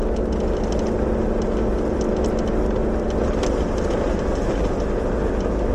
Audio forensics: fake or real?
real